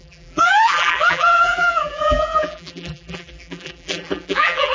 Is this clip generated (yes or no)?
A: yes